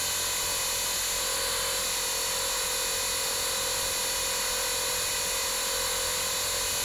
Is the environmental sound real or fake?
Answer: real